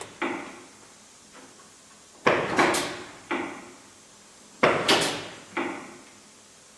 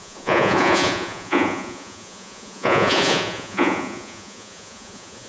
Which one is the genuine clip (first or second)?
first